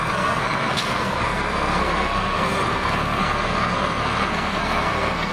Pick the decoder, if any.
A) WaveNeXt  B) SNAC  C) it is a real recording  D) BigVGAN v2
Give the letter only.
B